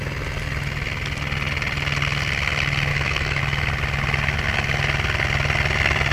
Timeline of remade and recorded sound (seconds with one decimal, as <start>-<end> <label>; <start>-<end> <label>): 0.0-2.9 recorded; 2.9-3.4 remade; 3.4-6.1 recorded